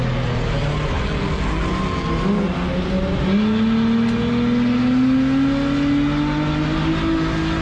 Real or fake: real